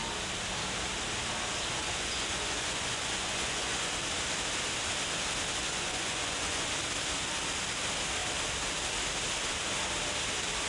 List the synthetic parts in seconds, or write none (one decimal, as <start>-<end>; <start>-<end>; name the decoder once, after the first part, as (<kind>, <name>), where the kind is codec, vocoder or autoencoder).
1.8-3.9 (vocoder, Vocos); 5.6-6.7